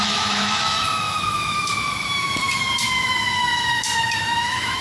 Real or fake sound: fake